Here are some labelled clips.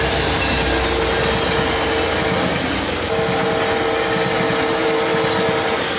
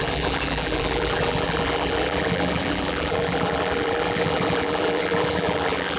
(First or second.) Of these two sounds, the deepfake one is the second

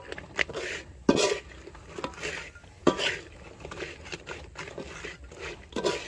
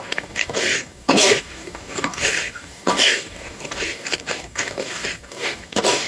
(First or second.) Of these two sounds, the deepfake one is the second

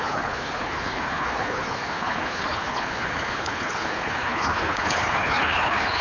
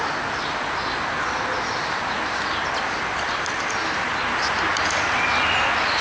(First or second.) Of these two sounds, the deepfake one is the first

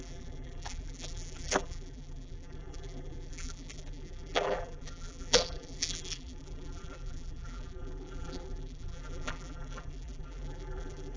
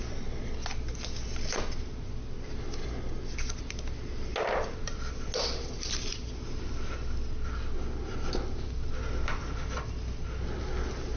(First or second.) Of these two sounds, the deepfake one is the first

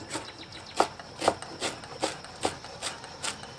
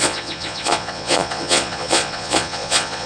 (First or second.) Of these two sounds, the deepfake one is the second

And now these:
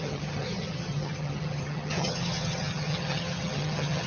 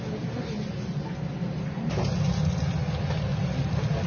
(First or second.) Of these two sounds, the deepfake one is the first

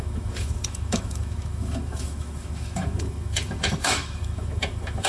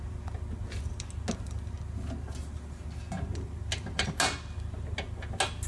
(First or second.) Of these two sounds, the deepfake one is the first